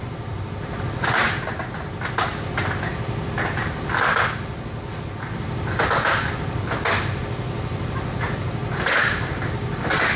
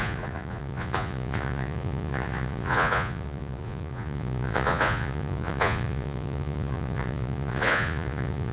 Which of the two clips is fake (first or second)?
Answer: second